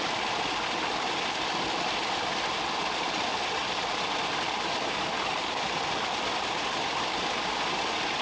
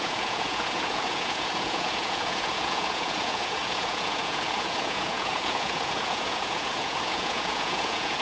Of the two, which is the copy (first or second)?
second